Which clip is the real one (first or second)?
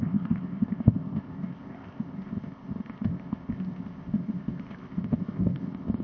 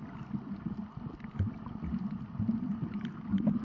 second